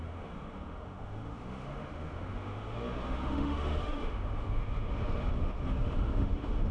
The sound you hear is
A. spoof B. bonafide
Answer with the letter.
A